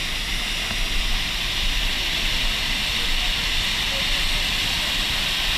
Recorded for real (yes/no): yes